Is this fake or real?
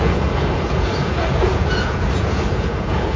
fake